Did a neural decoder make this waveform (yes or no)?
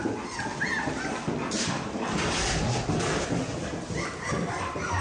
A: no